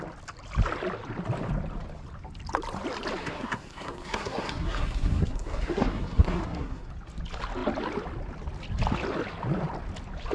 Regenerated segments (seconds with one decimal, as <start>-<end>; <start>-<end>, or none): 3.2-6.9